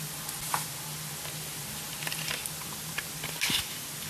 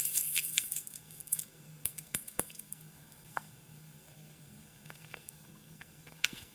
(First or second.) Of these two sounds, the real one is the first